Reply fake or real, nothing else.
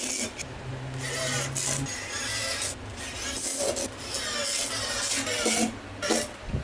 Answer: real